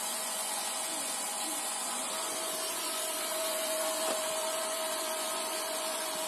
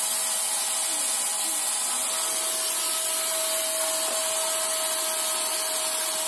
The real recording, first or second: second